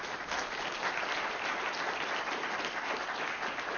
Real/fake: real